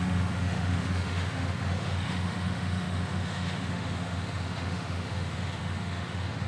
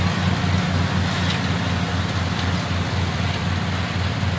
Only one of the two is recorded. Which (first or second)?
second